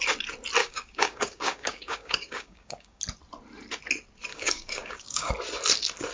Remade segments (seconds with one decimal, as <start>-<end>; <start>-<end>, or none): 0.6-3.0; 4.3-5.3